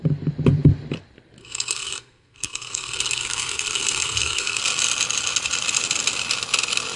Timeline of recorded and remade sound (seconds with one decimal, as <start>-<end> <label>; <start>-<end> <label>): 0.0-1.4 recorded; 1.4-4.6 remade; 4.6-7.0 recorded